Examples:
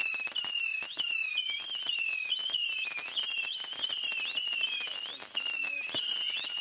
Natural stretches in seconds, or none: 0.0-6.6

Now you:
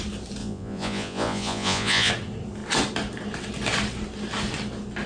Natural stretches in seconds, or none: 0.0-0.4; 2.1-5.1

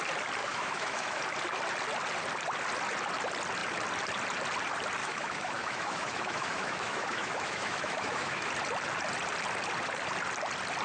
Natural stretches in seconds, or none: 0.0-0.4; 1.2-5.0; 8.5-10.8

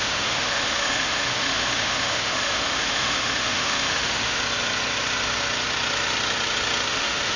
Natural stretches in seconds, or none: 4.4-6.9

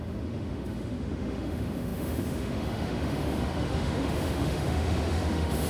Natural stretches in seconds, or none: none

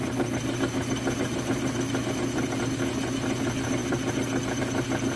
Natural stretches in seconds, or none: 0.0-5.2

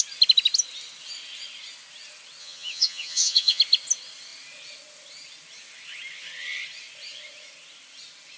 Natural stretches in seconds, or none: 0.0-2.4; 3.6-8.4

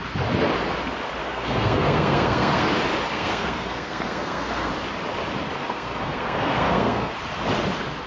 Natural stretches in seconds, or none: 0.0-1.2; 2.7-3.1; 4.7-5.6; 7.1-8.1